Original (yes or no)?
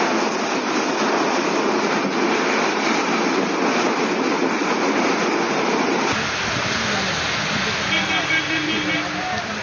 yes